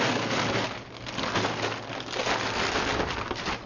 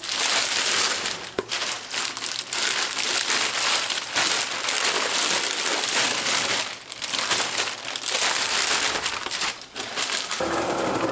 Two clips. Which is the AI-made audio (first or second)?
second